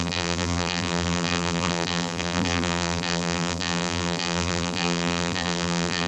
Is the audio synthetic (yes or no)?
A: yes